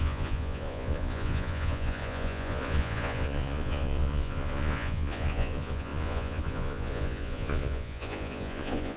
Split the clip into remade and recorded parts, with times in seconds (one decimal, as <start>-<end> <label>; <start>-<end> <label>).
0.0-9.0 remade